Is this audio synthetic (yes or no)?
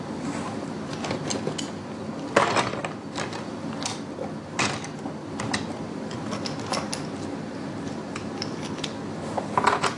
no